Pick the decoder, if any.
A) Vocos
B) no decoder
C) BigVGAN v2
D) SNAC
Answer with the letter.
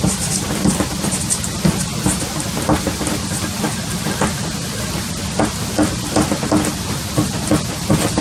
B